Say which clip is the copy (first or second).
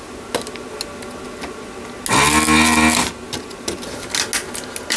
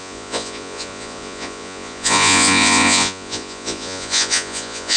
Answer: second